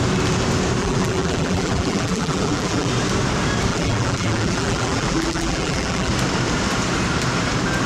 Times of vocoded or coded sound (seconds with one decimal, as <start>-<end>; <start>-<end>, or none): 0.8-2.9; 3.7-6.1